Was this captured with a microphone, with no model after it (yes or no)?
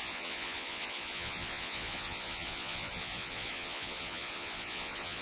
no